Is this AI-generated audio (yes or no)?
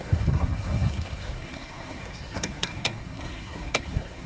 yes